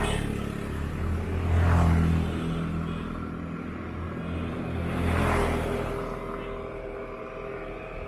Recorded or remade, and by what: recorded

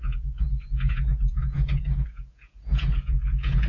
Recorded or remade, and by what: remade, vocoder, Vocos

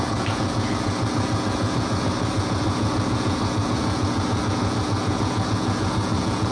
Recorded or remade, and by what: remade, vocoder, Vocos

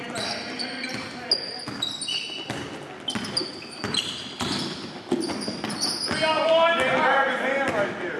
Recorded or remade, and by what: recorded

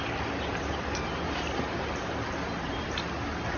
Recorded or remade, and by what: recorded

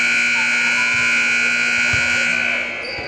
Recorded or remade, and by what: recorded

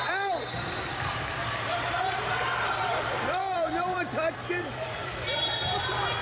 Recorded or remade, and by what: remade, vocoder, BigVGAN v2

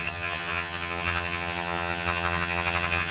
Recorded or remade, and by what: remade, vocoder, HiFi-GAN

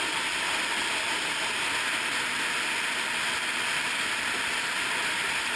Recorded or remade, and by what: recorded